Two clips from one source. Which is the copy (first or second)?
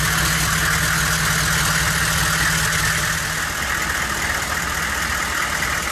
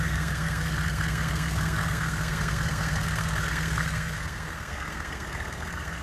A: second